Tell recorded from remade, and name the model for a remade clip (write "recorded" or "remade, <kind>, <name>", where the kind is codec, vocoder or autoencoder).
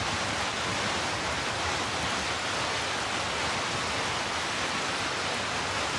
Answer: recorded